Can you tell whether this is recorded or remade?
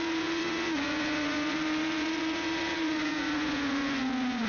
remade